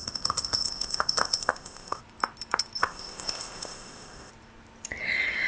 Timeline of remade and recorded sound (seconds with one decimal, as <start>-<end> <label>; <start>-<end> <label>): 0.0-2.0 remade; 2.0-2.8 recorded; 2.8-4.3 remade; 4.3-5.5 recorded